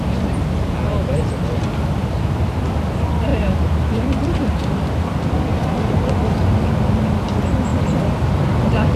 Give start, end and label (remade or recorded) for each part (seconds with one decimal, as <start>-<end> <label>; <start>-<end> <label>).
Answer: 0.0-3.3 recorded; 3.3-4.6 remade; 4.6-5.5 recorded; 5.5-6.0 remade; 6.0-9.0 recorded